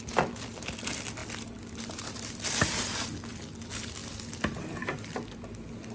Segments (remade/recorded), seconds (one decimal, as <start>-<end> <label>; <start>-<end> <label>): 0.0-5.9 recorded

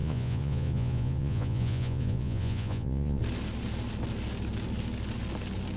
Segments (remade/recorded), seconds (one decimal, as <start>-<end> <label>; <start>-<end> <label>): 0.0-3.2 remade; 3.2-5.8 recorded

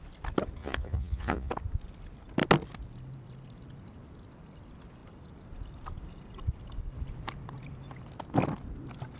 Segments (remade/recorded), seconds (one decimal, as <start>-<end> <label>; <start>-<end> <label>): 0.0-0.6 recorded; 0.6-1.5 remade; 1.5-9.2 recorded

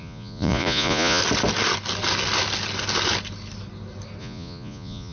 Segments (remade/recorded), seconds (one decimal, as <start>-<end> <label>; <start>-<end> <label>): 0.0-1.2 remade; 1.2-4.2 recorded; 4.2-5.1 remade

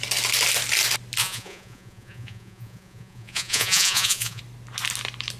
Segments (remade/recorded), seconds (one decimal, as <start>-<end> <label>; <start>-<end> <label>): 0.0-1.2 recorded; 1.2-4.4 remade; 4.4-5.4 recorded

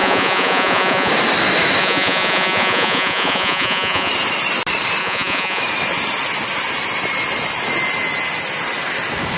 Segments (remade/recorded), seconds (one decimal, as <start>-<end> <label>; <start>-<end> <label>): 0.0-1.1 remade; 1.1-1.8 recorded; 1.8-4.1 remade; 4.1-5.0 recorded; 5.0-5.6 remade; 5.6-9.4 recorded

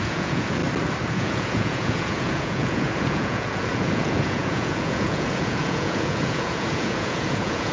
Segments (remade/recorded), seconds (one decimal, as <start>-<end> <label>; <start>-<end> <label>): 0.0-0.6 remade; 0.6-1.1 recorded; 1.1-7.7 remade

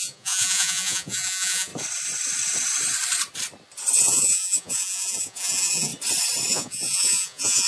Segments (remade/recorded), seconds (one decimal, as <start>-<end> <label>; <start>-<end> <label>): 0.0-1.7 remade; 1.7-4.0 recorded; 4.0-5.9 remade; 5.9-6.5 recorded; 6.5-7.7 remade